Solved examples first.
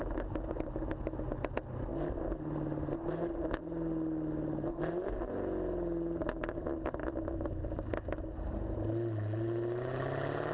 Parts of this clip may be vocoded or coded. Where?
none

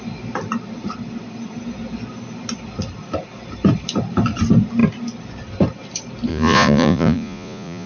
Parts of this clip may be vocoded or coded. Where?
6.3-7.9